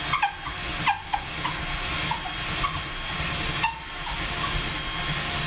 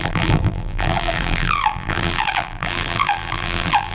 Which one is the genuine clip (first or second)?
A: first